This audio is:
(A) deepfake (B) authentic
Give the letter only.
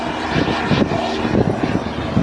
B